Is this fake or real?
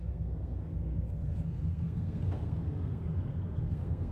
fake